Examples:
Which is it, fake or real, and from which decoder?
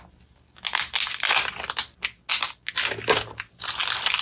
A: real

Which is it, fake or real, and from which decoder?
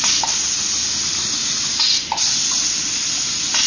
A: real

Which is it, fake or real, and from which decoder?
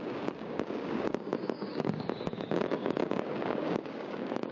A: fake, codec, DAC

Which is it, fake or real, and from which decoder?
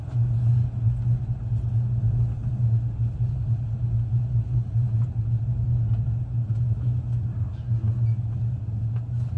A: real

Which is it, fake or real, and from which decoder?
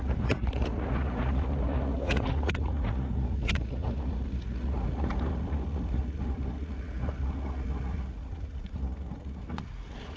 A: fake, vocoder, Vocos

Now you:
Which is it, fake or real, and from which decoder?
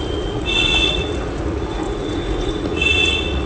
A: fake, vocoder, Vocos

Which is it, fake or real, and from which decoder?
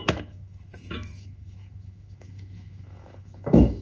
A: fake, autoencoder, DAC-VAE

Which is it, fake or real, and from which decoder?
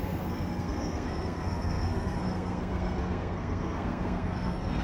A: fake, codec, SNAC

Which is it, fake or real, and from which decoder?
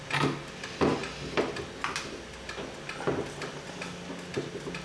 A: real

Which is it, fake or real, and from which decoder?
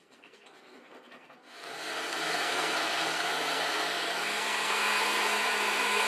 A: fake, codec, SNAC